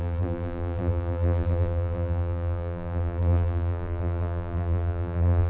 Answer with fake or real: fake